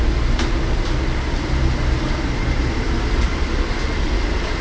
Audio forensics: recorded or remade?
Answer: recorded